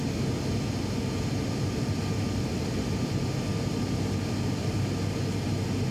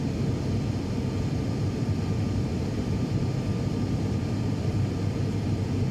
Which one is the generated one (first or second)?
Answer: second